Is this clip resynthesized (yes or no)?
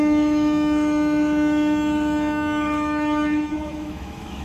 yes